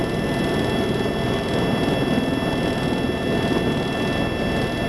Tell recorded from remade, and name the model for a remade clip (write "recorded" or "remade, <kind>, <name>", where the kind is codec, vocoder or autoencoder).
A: recorded